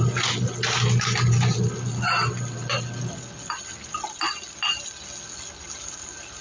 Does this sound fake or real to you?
real